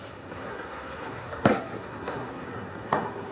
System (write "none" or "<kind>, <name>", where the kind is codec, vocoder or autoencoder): codec, SNAC